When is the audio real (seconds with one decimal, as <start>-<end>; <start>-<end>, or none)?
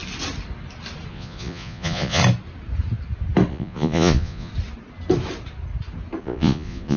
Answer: 0.0-1.1; 2.2-3.5; 4.5-6.2